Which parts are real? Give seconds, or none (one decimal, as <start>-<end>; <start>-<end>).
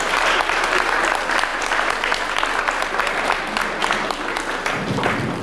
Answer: 0.0-1.5; 2.6-3.8